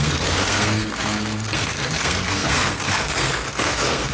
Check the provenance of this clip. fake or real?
fake